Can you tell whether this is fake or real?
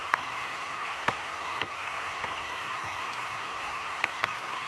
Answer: fake